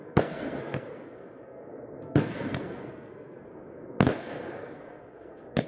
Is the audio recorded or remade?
remade